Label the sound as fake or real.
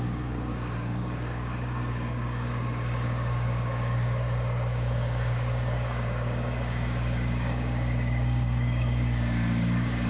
fake